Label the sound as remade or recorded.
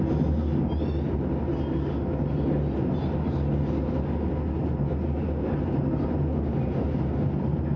recorded